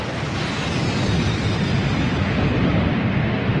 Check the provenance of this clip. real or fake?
real